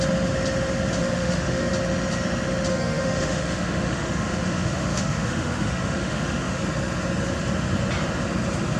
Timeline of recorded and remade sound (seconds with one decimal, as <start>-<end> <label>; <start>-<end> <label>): 0.0-1.0 recorded; 1.0-1.7 remade; 1.7-2.7 recorded; 2.7-6.6 remade; 6.6-8.8 recorded